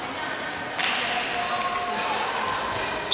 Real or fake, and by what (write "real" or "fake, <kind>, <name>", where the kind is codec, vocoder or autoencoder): real